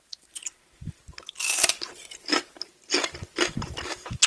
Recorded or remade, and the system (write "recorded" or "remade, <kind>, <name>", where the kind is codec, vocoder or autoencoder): recorded